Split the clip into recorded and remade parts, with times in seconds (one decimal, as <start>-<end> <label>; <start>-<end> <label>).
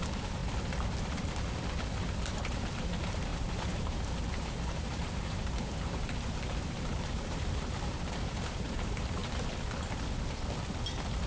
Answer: 0.0-0.4 remade; 0.4-2.1 recorded; 2.1-9.2 remade; 9.2-11.3 recorded